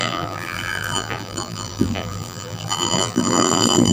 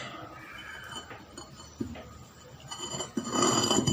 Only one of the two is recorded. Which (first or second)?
second